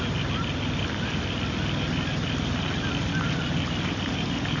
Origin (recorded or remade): recorded